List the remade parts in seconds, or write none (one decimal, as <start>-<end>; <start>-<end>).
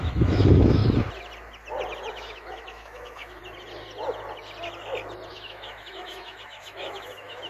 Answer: 0.0-0.8; 2.1-3.4; 5.3-7.5